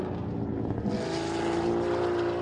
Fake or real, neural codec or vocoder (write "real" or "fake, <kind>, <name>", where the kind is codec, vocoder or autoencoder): real